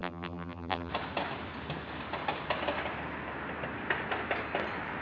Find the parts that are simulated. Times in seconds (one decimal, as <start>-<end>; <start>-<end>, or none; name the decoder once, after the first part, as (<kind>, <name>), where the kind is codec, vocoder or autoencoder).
0.0-0.9 (vocoder, BigVGAN v2)